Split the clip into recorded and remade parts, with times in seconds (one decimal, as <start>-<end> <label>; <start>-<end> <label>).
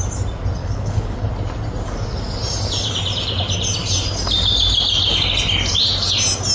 0.0-0.6 recorded; 0.6-1.3 remade; 1.3-6.5 recorded